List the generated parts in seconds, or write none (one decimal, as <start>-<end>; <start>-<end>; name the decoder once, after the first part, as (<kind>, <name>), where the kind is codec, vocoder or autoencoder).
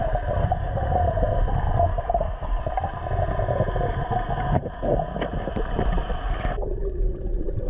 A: 0.4-0.9 (codec, DAC); 1.9-2.6